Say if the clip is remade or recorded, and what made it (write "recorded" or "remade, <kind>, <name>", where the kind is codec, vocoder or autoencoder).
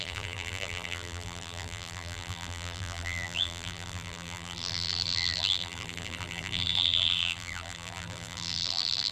remade, vocoder, BigVGAN v2